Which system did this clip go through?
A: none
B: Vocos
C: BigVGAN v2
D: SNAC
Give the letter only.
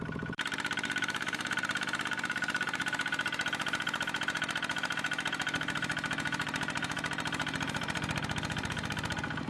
C